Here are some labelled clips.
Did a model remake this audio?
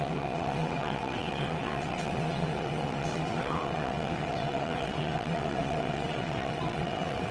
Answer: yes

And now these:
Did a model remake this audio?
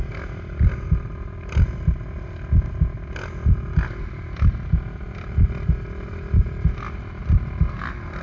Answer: no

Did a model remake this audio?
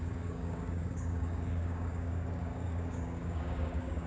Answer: yes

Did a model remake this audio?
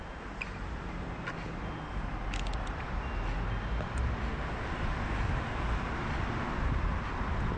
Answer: no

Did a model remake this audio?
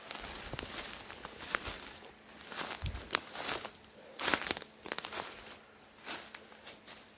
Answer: no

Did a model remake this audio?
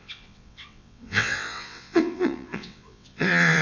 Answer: yes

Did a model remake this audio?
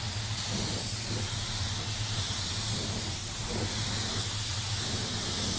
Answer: no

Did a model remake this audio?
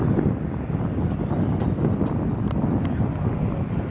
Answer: no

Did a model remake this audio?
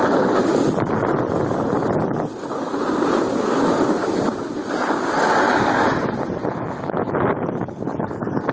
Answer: no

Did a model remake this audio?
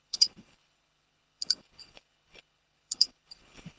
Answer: yes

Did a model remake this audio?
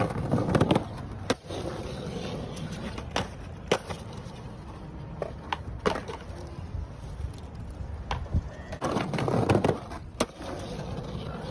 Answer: no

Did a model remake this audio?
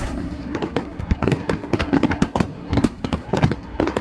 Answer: yes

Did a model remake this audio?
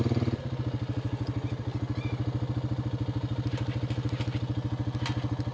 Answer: no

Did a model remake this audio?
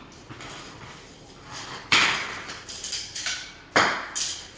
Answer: no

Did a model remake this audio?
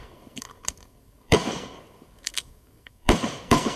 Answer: yes